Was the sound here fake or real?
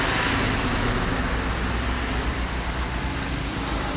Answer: real